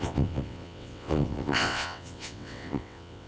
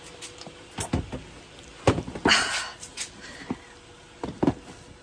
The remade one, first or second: first